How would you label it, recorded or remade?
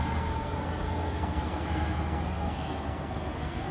remade